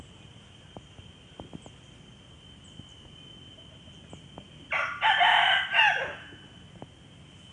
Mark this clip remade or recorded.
recorded